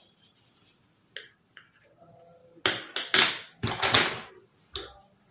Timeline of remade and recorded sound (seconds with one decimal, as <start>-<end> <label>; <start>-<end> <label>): 0.0-5.3 recorded